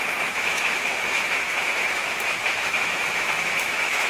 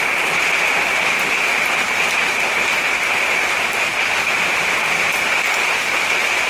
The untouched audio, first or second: second